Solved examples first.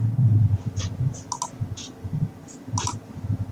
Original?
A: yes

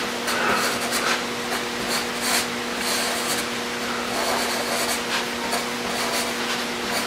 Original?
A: yes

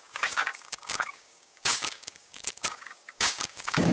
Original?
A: no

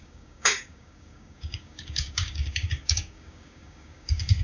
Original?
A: no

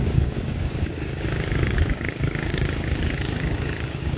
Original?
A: no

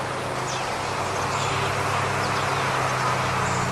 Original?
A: yes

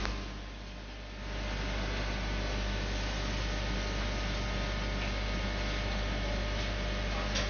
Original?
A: yes